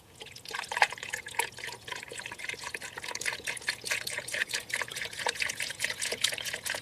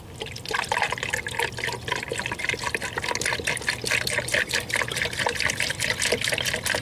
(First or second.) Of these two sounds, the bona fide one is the second